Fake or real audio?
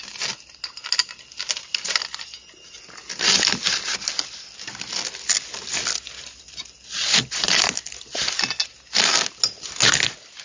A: real